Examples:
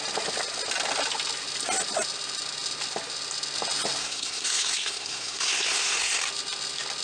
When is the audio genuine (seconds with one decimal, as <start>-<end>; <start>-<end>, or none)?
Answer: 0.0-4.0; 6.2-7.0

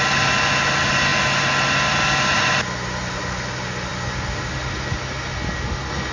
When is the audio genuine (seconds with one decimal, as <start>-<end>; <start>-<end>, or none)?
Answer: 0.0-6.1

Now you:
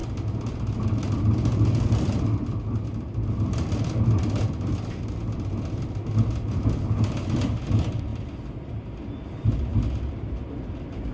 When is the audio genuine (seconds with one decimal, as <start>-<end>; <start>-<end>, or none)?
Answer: 0.0-11.1

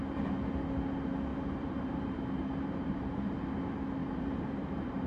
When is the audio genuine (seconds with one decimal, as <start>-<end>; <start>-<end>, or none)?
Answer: 0.0-1.3; 3.5-4.0

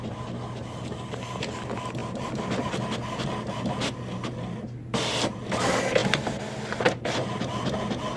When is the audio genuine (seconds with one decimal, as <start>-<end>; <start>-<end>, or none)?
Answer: 0.0-2.0; 2.8-8.2

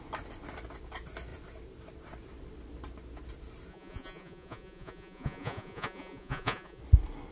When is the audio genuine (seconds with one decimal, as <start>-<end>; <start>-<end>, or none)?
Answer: 0.0-3.7; 6.8-7.3

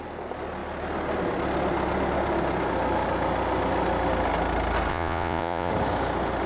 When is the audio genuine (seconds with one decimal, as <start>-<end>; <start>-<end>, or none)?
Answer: 0.0-4.9; 5.7-6.5